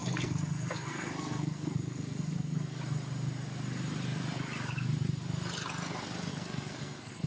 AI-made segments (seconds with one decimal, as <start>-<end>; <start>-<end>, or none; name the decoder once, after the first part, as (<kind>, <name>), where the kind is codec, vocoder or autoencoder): 0.0-2.8 (codec, SNAC); 6.3-7.3